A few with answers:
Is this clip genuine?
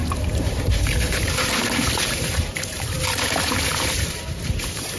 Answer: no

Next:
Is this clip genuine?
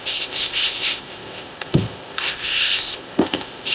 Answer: no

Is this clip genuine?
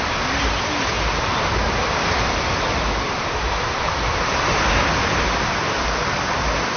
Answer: no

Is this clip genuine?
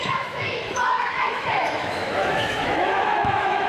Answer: no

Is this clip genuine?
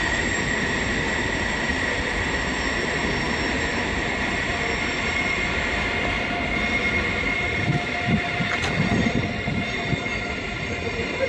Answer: yes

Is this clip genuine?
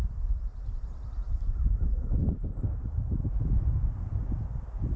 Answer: yes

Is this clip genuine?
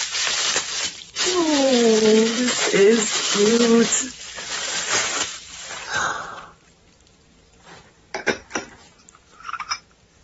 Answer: no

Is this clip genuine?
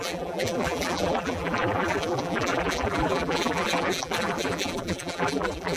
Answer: no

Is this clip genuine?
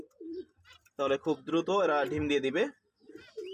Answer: no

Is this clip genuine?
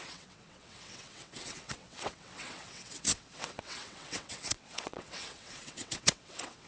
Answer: no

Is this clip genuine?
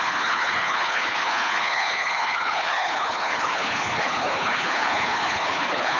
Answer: no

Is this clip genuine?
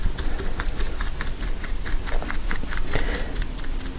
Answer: yes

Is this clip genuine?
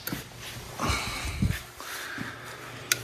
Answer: yes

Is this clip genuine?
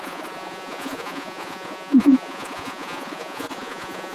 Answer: no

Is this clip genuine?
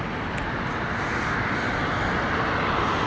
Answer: yes